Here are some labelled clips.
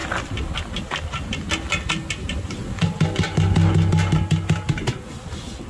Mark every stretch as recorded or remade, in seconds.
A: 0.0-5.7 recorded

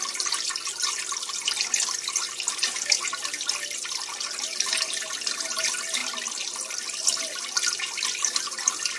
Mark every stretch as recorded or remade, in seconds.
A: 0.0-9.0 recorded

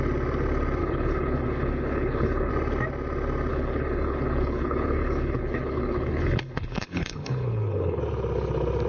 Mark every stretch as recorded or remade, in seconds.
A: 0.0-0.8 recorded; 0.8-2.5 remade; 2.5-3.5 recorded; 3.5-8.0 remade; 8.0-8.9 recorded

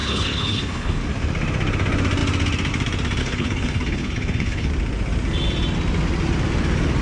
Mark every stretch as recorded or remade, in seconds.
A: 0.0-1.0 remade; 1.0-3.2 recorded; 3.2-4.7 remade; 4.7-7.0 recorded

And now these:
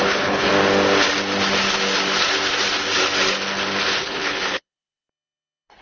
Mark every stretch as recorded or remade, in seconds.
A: 0.0-0.5 remade; 0.5-4.0 recorded; 4.0-5.8 remade

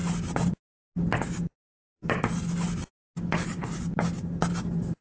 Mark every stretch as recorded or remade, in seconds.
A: 0.0-5.0 recorded

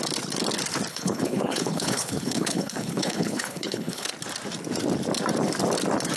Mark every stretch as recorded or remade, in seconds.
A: 0.0-0.9 recorded; 0.9-4.1 remade; 4.1-6.2 recorded